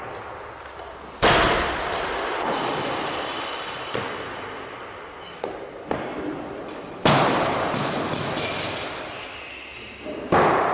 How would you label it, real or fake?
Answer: real